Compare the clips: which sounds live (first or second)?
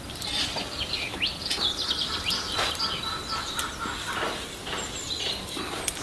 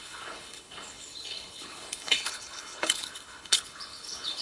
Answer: first